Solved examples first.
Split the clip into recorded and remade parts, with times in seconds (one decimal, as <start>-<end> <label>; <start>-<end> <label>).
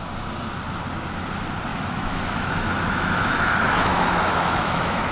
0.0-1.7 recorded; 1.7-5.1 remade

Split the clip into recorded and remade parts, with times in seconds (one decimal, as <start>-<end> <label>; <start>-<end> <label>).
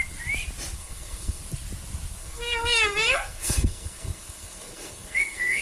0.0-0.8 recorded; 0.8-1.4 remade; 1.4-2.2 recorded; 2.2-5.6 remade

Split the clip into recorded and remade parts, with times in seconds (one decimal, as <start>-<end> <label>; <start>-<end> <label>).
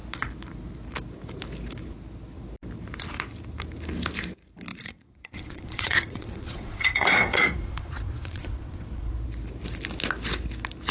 0.0-4.7 recorded; 4.7-9.1 remade; 9.1-10.9 recorded